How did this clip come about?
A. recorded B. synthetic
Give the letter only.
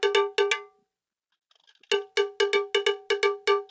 A